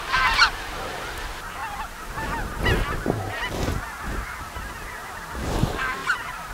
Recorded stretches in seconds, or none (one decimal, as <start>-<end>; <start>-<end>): 0.0-6.5